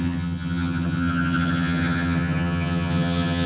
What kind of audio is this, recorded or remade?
remade